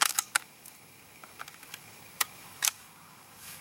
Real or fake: fake